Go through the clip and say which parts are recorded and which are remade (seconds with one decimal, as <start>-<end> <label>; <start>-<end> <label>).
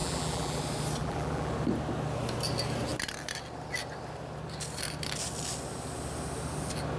0.0-0.6 remade; 0.6-1.0 recorded; 1.0-1.5 remade; 1.5-7.0 recorded